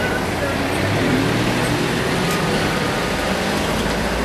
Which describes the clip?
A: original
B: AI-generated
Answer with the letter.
A